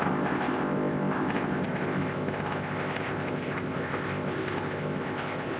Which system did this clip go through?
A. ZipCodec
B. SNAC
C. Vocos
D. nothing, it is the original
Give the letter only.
A